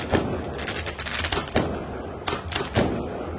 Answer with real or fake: real